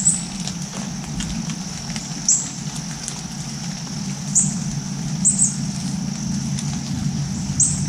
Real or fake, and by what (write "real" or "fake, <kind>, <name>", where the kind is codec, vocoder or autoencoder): real